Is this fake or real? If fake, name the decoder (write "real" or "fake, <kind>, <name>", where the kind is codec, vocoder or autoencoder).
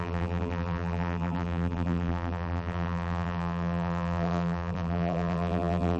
fake, vocoder, BigVGAN v2